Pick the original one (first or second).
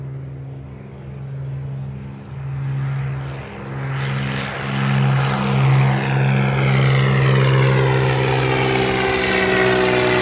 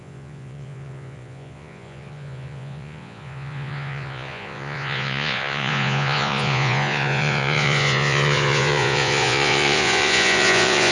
first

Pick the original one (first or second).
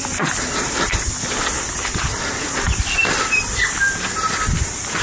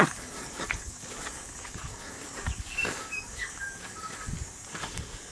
first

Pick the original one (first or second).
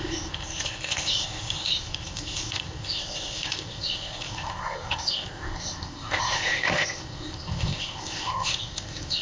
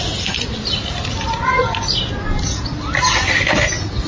second